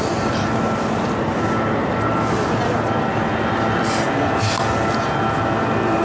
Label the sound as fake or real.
real